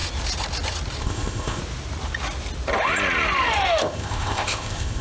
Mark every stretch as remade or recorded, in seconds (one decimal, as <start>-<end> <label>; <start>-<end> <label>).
0.0-1.0 recorded; 1.0-1.6 remade; 1.6-3.8 recorded; 3.8-5.0 remade